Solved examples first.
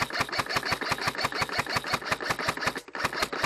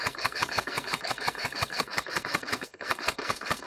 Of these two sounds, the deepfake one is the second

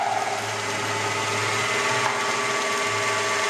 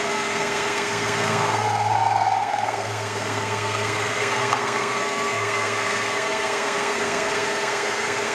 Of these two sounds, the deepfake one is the second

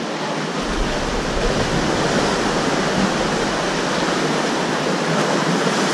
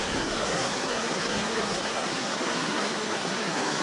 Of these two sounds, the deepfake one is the second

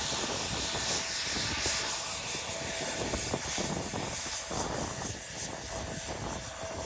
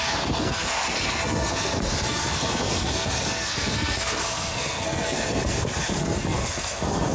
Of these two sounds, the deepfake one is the second